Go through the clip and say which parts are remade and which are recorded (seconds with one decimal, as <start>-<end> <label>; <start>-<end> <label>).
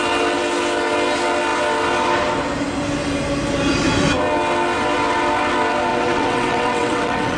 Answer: 0.0-5.9 recorded; 5.9-7.4 remade